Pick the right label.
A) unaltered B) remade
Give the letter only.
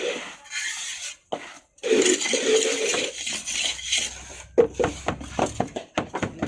A